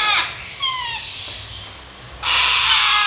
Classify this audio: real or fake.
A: real